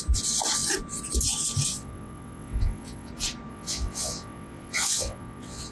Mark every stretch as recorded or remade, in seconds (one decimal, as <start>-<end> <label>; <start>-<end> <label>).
0.0-1.7 recorded; 1.7-3.1 remade; 3.1-3.5 recorded; 3.5-5.7 remade